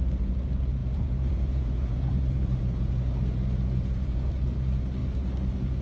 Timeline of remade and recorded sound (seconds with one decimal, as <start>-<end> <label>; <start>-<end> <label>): 0.0-0.8 recorded; 0.8-4.3 remade; 4.3-5.8 recorded